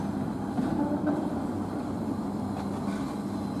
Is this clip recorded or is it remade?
recorded